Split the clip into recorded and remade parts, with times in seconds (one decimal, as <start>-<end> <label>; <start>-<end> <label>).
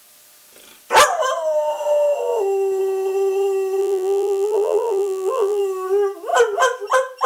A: 0.0-3.8 recorded; 3.8-5.6 remade; 5.6-7.3 recorded